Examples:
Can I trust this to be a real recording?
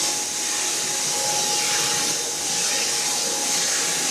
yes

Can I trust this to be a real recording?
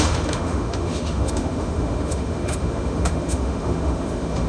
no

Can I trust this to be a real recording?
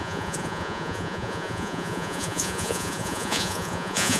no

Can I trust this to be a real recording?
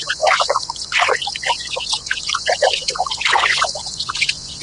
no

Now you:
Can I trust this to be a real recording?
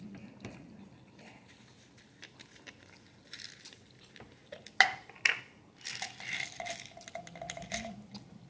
yes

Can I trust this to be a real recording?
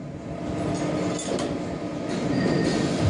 yes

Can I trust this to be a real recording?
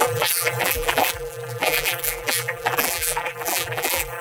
no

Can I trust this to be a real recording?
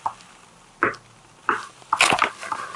yes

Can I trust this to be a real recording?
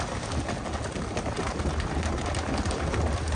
yes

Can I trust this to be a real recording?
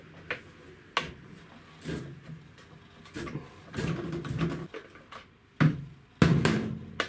yes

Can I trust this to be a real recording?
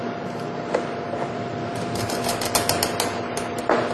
yes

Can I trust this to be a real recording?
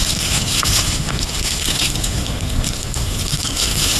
no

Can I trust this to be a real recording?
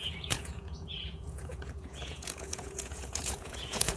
no